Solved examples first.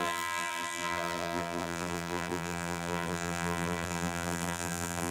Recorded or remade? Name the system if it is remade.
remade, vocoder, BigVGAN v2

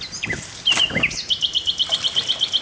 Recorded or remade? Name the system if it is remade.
recorded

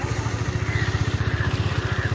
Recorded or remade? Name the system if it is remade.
remade, vocoder, BigVGAN v2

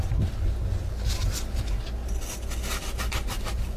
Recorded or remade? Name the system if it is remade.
recorded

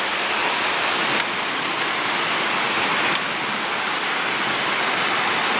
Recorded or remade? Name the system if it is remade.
recorded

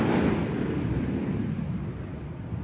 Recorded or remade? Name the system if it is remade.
recorded